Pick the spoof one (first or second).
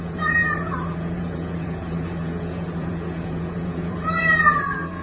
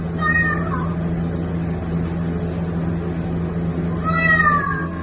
first